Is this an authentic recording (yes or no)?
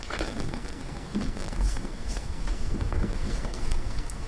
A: no